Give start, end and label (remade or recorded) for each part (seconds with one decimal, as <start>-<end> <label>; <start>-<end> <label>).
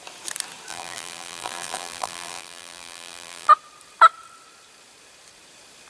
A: 0.0-0.7 recorded; 0.7-3.5 remade; 3.5-5.9 recorded